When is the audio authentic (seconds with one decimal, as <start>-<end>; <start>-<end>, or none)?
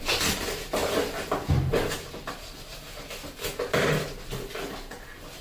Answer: 0.0-5.4